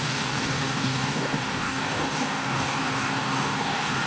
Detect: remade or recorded remade